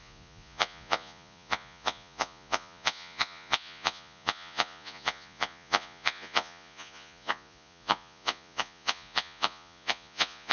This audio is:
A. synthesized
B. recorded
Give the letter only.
A